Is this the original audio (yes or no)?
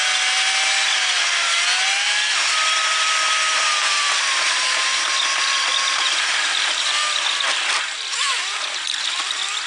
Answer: yes